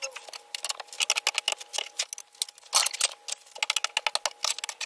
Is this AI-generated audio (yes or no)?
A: no